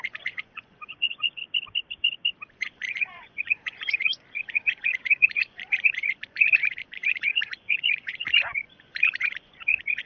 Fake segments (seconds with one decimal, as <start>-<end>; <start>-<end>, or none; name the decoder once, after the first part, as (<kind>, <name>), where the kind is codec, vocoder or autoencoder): 0.0-1.4 (vocoder, Vocos); 2.5-10.1